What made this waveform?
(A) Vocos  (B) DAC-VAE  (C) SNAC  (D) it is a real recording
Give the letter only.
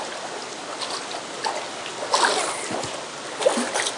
D